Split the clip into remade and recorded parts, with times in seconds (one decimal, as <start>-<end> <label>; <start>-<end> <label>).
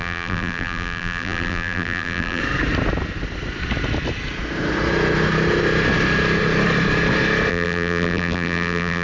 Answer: 0.0-2.4 remade; 2.4-7.5 recorded; 7.5-9.0 remade